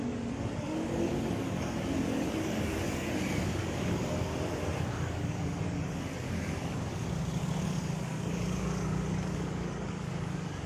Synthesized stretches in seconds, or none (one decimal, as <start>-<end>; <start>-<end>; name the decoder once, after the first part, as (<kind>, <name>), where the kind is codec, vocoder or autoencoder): 0.0-4.3 (codec, DAC); 4.8-10.7